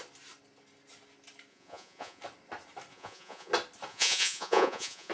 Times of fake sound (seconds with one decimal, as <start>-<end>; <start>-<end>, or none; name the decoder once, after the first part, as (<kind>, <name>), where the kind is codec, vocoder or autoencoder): 1.5-2.2 (vocoder, Vocos); 2.9-3.5; 3.9-5.1